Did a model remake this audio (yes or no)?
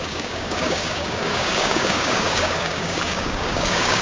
yes